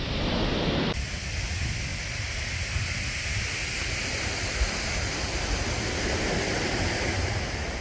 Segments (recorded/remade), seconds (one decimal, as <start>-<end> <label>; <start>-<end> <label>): 0.0-7.8 recorded